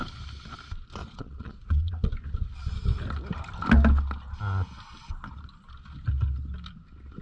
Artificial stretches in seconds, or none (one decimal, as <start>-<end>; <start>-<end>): 1.0-2.1